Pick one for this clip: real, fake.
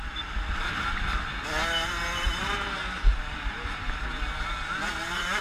real